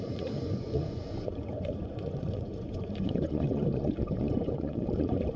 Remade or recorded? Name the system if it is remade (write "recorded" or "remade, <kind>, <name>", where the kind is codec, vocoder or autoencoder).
remade, vocoder, Vocos